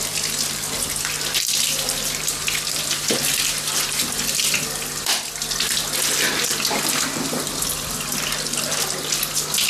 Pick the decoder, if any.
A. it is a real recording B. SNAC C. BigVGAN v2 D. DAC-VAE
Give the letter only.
C